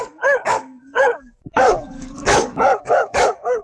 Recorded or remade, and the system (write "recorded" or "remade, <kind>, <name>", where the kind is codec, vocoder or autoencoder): remade, codec, DAC